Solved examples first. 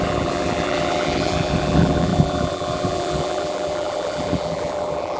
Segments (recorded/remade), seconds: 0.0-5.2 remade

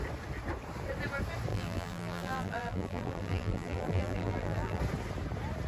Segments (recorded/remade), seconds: 0.0-1.5 recorded; 1.5-4.8 remade; 4.8-5.7 recorded

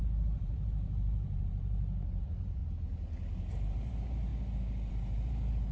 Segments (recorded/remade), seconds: 0.0-2.6 remade; 2.6-3.5 recorded; 3.5-4.3 remade; 4.3-4.9 recorded; 4.9-5.7 remade

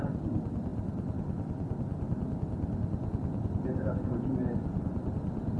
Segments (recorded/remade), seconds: 0.0-5.6 recorded